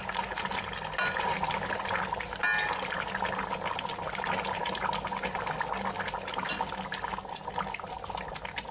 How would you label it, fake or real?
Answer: real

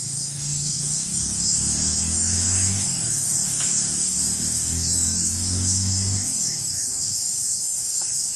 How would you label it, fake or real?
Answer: fake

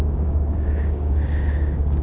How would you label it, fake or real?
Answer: fake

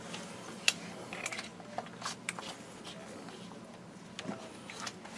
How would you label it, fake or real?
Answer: real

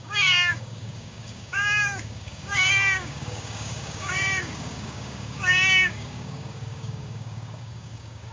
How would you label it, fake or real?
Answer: fake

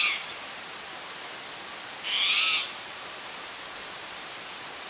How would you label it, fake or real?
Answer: real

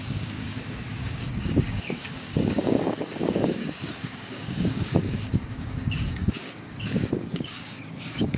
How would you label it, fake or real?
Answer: fake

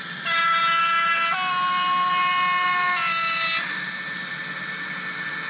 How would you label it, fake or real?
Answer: real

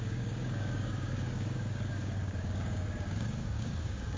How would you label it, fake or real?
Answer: fake